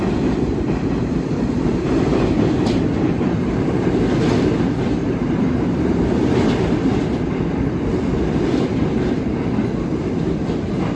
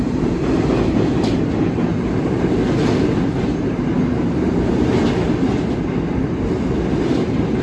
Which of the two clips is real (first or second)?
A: second